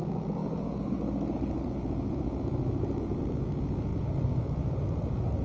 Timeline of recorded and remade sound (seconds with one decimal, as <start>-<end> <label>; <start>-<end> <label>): 0.0-5.4 remade